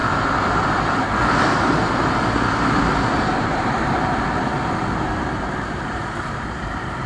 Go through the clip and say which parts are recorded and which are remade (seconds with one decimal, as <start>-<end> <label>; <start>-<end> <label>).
0.0-4.5 remade; 4.5-5.2 recorded; 5.2-7.1 remade

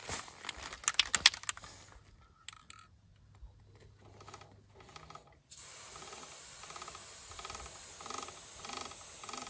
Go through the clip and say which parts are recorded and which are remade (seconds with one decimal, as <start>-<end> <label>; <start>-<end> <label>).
0.0-9.5 recorded